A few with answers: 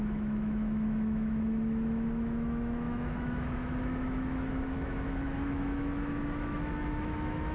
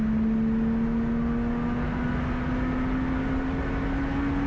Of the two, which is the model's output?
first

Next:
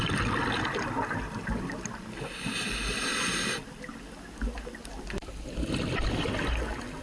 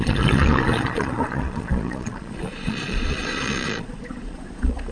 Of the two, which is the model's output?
second